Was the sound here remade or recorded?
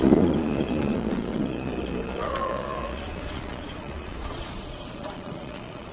remade